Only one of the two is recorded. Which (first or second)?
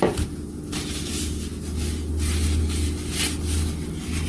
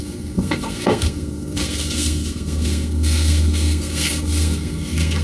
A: first